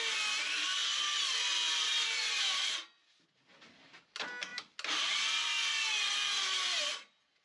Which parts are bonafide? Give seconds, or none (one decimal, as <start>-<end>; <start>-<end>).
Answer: 0.0-7.4